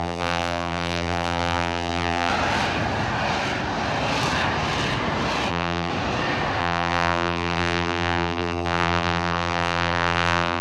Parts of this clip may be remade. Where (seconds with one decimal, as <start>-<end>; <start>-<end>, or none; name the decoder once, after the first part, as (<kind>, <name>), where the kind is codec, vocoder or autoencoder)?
0.0-2.3 (vocoder, BigVGAN v2); 5.5-5.9; 6.6-10.6